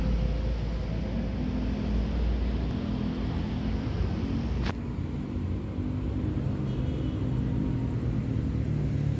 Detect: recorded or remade recorded